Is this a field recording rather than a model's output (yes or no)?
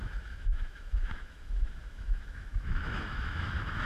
no